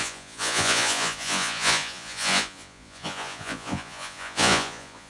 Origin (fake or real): fake